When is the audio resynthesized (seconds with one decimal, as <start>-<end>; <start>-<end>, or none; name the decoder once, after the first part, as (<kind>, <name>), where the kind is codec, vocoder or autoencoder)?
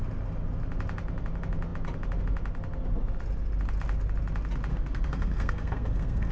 4.7-6.3 (codec, SNAC)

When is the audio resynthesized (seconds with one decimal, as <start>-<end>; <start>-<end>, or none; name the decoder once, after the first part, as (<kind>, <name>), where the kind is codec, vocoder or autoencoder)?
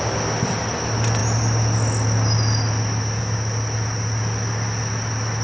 none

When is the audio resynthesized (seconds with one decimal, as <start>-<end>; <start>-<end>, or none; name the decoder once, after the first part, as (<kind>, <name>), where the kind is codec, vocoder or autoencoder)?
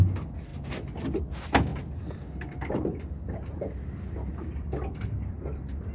none